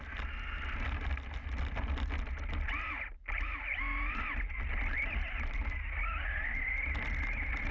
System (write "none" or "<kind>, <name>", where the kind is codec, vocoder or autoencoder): none